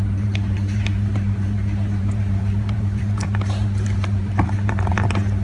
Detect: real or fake fake